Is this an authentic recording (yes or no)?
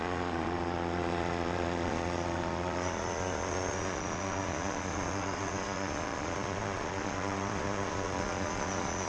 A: no